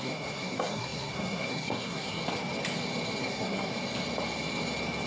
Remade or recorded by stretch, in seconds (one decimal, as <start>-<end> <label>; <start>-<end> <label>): 0.0-2.2 remade; 2.2-3.2 recorded; 3.2-3.7 remade; 3.7-5.1 recorded